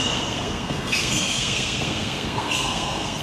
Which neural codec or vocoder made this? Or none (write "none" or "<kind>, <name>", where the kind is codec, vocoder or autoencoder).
codec, SNAC